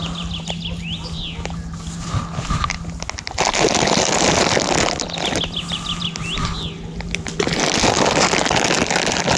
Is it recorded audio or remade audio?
recorded